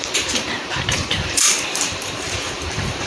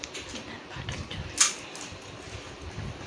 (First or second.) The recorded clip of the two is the second